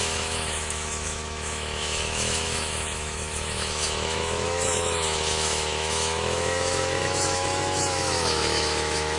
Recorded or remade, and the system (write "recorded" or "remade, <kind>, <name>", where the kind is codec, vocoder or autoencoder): remade, autoencoder, DAC-VAE